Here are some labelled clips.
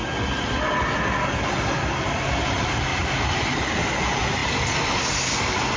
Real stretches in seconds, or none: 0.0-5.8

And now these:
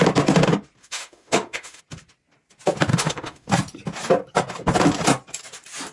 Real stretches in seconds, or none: 0.0-0.8; 1.8-2.9; 3.5-5.9